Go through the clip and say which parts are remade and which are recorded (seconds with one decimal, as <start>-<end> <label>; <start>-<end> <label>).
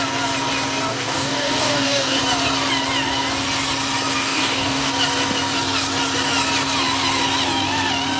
0.0-0.9 recorded; 0.9-2.2 remade; 2.2-4.2 recorded; 4.2-4.9 remade; 4.9-8.2 recorded